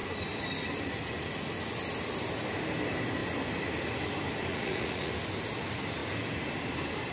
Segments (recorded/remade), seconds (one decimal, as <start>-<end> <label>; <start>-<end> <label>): 0.0-4.5 recorded; 4.5-5.1 remade; 5.1-7.1 recorded